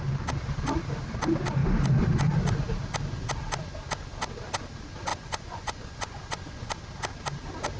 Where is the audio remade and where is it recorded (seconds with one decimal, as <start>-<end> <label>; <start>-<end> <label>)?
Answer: 0.0-5.1 recorded; 5.1-6.7 remade; 6.7-7.8 recorded